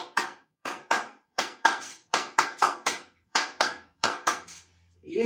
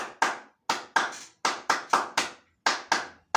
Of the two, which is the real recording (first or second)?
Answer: second